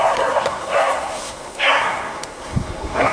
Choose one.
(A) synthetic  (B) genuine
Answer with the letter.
A